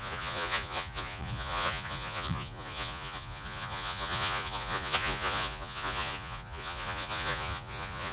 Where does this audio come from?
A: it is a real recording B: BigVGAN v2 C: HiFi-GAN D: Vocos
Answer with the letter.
D